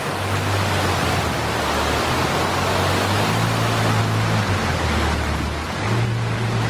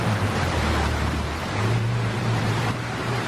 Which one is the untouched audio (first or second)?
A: first